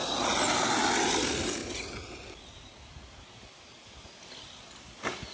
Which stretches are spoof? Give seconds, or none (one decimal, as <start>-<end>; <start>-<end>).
none